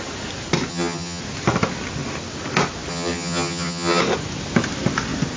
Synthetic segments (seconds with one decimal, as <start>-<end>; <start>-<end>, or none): 0.7-1.2; 2.9-4.0